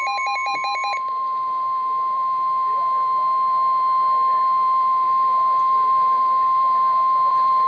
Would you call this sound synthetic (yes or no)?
yes